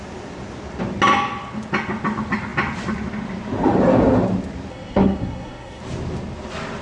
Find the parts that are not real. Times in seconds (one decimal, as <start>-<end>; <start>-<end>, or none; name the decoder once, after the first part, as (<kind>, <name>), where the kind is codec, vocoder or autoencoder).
4.7-5.8 (codec, SNAC)